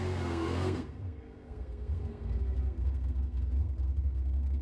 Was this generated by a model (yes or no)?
yes